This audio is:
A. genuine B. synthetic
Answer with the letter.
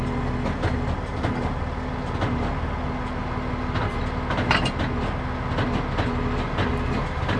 A